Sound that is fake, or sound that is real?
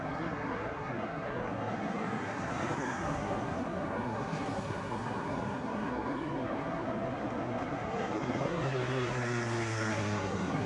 fake